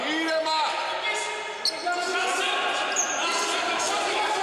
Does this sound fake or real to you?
real